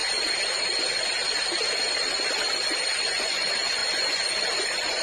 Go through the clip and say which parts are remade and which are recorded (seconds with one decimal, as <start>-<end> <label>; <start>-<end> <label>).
0.0-3.0 recorded; 3.0-5.0 remade